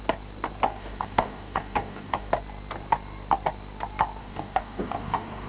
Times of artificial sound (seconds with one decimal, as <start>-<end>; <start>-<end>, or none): 0.7-2.3; 4.2-5.5